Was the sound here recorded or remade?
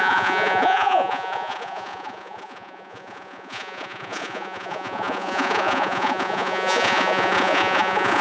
remade